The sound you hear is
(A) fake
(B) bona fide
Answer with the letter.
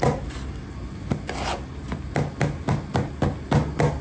B